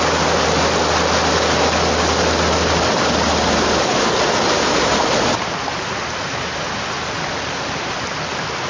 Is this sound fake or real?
real